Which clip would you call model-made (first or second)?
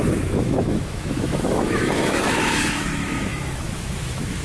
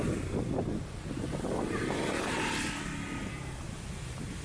first